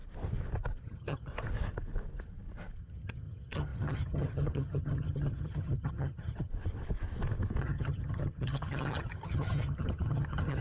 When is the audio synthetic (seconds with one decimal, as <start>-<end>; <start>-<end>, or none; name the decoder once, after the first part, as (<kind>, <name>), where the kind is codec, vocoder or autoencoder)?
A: 0.8-1.3 (vocoder, HiFi-GAN); 2.8-6.5; 7.6-10.6